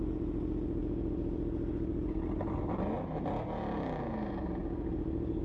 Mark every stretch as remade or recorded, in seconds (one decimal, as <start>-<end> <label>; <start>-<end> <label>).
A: 0.0-5.4 recorded